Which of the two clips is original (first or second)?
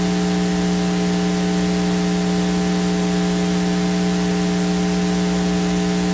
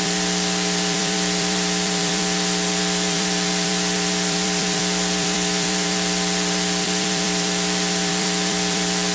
first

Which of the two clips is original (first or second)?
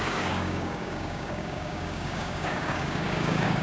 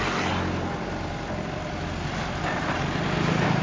second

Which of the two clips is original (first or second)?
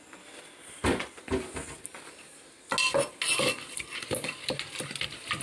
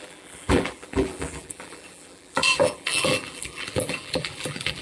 first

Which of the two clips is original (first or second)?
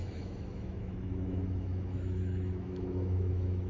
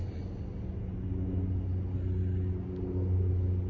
second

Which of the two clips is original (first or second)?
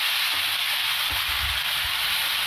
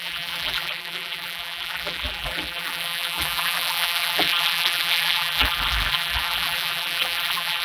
first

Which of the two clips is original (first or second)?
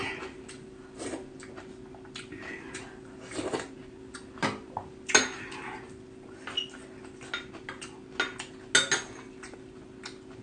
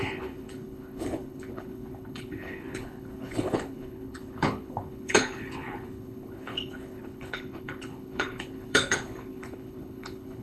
first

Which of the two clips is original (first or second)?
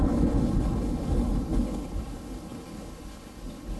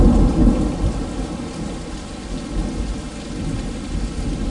second